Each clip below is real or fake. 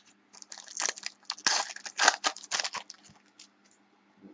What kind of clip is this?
real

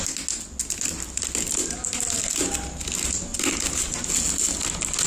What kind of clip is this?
real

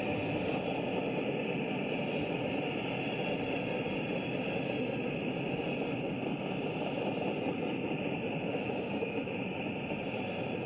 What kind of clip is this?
real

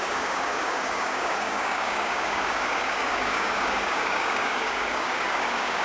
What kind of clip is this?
fake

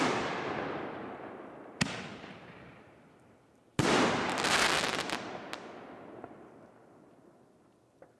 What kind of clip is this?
real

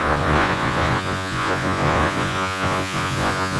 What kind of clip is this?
fake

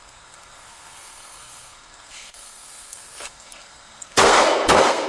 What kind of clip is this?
fake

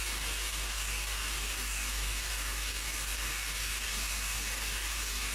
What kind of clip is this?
fake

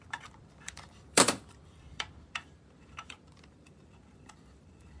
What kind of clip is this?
fake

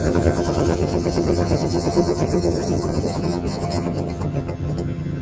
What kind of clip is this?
fake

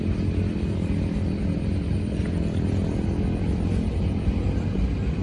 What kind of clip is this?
real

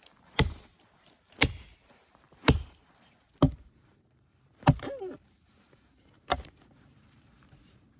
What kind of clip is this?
fake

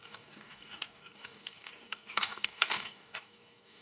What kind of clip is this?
fake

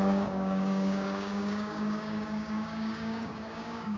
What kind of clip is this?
fake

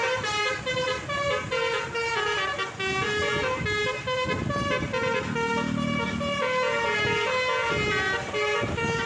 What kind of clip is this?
real